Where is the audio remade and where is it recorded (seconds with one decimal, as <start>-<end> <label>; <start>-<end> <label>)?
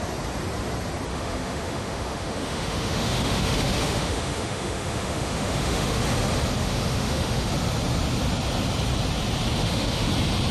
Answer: 0.0-1.1 recorded; 1.1-6.0 remade; 6.0-6.6 recorded; 6.6-7.5 remade; 7.5-9.6 recorded; 9.6-10.1 remade; 10.1-10.5 recorded